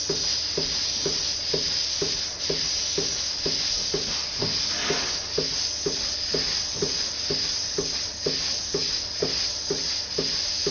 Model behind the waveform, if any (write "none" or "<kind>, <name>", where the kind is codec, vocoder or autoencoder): none